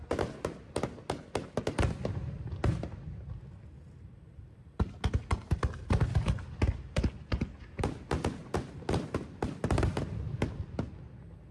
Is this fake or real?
real